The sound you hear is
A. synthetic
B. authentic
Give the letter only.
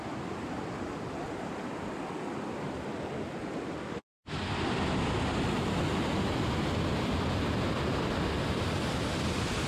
B